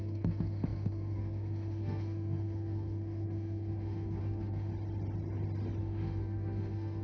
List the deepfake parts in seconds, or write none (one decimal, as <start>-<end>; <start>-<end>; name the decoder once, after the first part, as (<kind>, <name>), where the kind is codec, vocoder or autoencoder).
0.0-4.7 (autoencoder, DAC-VAE); 5.8-7.0